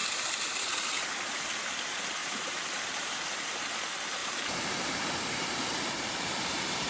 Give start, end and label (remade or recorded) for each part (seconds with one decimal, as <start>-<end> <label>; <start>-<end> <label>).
0.0-2.2 recorded; 2.2-3.3 remade; 3.3-4.2 recorded; 4.2-6.9 remade